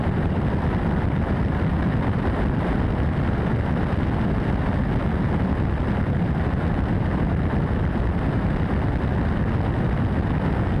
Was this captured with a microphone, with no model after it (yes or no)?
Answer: yes